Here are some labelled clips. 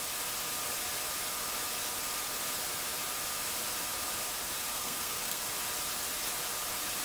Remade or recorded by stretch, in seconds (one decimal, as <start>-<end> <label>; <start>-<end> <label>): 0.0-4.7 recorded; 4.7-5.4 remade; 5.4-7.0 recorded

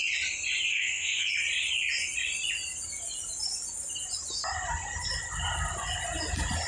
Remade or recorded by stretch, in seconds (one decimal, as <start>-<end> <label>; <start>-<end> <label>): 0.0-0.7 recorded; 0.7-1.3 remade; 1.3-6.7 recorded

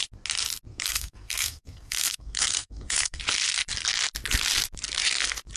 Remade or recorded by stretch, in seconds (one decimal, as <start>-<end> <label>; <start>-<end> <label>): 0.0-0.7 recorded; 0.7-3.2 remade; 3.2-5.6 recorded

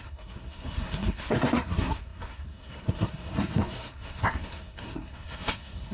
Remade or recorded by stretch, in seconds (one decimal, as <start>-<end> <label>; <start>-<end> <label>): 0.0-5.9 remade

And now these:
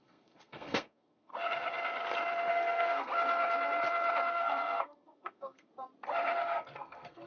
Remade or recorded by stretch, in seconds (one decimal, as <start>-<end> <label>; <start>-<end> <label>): 0.0-1.3 remade; 1.3-2.5 recorded; 2.5-3.1 remade; 3.1-4.3 recorded; 4.3-5.7 remade; 5.7-6.4 recorded; 6.4-7.3 remade